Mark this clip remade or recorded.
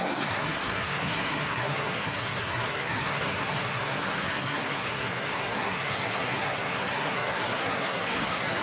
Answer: remade